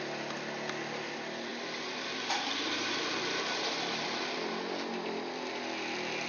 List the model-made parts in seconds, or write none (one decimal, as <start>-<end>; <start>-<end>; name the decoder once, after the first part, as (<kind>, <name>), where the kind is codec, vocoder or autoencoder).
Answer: none